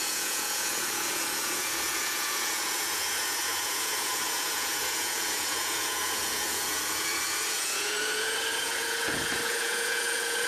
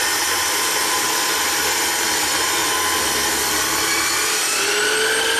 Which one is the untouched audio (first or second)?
second